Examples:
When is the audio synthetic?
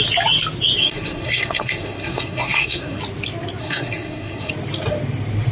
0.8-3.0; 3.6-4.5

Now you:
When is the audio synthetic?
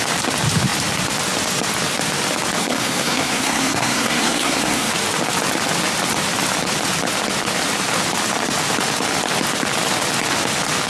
2.6-4.9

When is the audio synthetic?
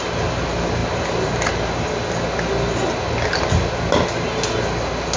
none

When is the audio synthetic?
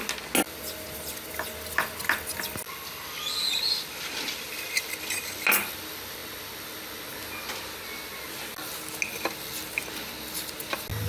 none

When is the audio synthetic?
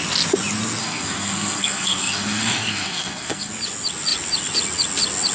0.8-3.5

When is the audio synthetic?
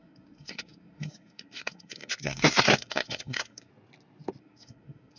0.0-3.7; 4.4-5.2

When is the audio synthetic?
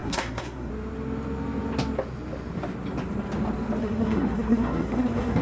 0.0-0.7; 3.8-5.4